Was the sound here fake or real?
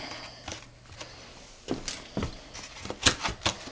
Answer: real